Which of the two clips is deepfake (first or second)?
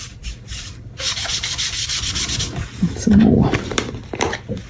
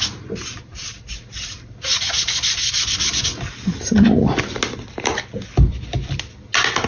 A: first